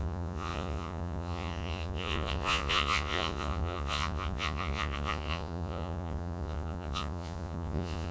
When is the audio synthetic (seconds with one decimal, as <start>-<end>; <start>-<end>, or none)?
0.0-8.1